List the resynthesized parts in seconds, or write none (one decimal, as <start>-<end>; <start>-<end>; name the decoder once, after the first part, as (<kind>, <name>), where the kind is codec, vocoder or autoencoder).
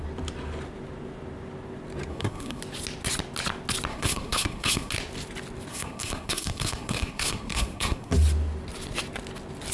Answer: 2.1-2.6 (codec, SNAC); 3.9-4.9; 5.7-8.1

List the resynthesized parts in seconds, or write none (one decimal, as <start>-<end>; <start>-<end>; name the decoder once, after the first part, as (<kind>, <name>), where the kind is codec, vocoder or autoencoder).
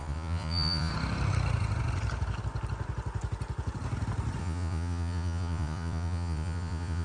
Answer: 0.0-0.9 (vocoder, Vocos); 4.4-7.0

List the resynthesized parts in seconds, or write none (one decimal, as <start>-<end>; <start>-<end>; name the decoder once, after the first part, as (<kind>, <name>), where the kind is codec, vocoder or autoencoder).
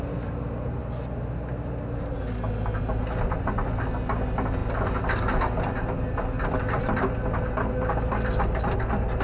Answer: none